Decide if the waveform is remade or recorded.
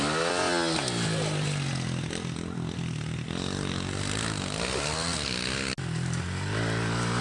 recorded